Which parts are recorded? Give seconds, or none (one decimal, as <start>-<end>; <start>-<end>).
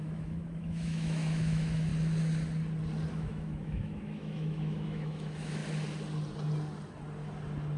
1.9-3.1; 5.6-7.8